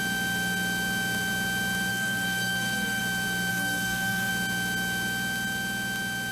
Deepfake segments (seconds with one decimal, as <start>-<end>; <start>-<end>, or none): 1.9-3.0; 3.5-4.3